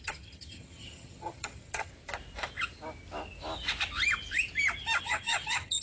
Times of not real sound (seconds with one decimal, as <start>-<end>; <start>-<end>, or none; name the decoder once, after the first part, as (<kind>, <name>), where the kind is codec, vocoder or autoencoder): 0.0-1.9 (vocoder, HiFi-GAN); 5.0-5.8